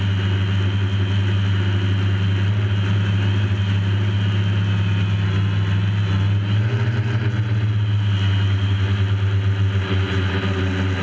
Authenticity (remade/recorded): recorded